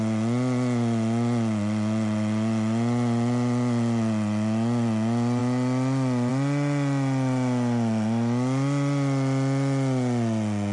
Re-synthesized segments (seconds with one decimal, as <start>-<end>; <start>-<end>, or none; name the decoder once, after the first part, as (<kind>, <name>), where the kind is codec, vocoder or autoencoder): none